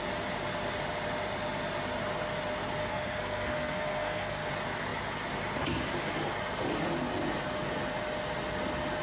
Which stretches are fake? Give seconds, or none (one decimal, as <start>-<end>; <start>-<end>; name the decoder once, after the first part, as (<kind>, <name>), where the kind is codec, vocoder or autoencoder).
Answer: 2.8-4.5 (codec, SNAC)